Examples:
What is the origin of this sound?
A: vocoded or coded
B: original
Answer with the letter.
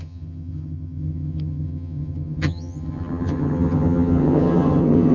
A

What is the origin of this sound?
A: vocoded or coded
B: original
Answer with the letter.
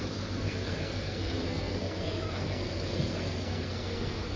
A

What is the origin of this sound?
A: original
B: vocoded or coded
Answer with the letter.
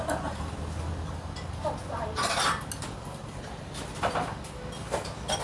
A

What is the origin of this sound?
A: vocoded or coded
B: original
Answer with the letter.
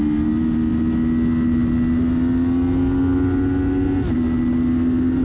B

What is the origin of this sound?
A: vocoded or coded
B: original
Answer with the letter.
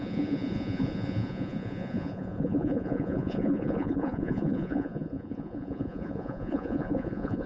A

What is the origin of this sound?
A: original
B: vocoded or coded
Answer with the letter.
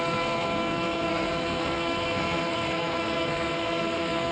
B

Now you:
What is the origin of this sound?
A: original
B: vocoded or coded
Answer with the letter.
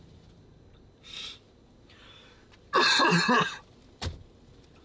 B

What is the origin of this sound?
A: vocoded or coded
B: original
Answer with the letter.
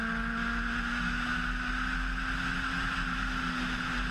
B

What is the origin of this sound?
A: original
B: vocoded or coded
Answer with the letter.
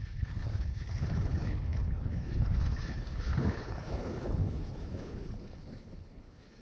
B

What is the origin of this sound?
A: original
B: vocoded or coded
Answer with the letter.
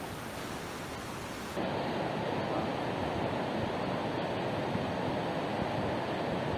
A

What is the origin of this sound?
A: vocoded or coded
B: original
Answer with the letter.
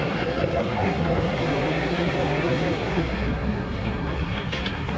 A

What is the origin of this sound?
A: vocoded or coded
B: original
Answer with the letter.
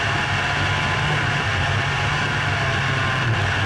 B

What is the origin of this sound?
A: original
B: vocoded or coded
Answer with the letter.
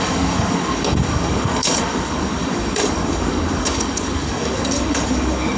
B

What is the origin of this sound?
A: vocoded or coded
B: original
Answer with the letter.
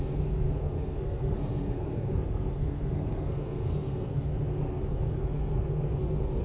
A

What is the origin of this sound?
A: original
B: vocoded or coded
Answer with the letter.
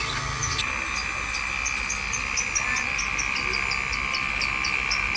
A